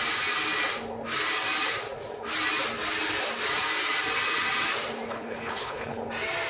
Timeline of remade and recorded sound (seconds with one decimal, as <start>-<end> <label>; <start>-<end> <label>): 0.0-5.1 recorded; 5.1-6.0 remade; 6.0-6.5 recorded